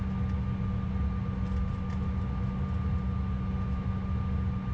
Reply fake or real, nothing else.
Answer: real